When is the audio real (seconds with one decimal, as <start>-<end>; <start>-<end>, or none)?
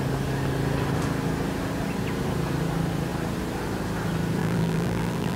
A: 0.0-4.4